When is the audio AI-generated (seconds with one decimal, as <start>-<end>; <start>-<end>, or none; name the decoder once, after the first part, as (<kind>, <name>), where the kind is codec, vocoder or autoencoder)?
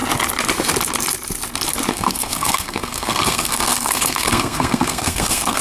1.9-5.6 (codec, SNAC)